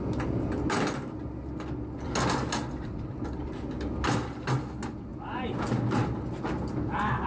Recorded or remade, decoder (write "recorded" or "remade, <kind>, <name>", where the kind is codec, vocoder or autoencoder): recorded